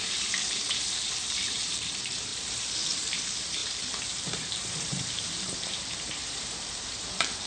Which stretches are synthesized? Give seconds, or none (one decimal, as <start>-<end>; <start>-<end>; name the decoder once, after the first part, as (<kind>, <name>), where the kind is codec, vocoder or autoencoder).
0.0-7.5 (vocoder, BigVGAN v2)